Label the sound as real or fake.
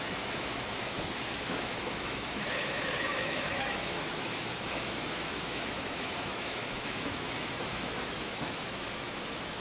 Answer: fake